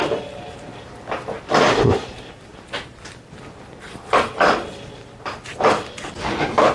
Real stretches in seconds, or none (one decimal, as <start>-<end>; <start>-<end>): 0.7-1.9; 2.5-6.7